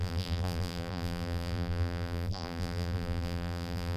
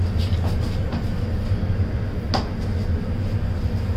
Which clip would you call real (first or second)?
second